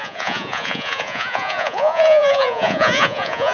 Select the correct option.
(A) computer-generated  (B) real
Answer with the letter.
A